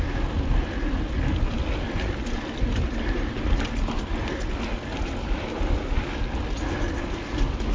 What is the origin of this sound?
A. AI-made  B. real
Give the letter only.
B